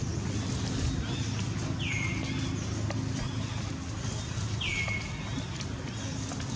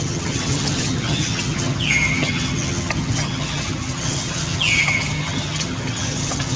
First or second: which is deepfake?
second